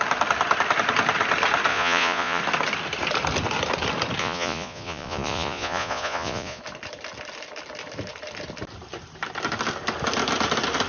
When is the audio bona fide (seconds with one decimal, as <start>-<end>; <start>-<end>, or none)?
0.0-1.7; 2.4-4.2; 6.6-10.9